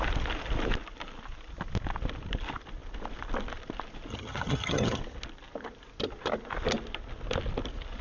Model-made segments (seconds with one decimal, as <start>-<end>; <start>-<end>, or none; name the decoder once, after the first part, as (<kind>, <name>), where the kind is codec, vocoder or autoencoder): 4.1-5.0 (vocoder, HiFi-GAN)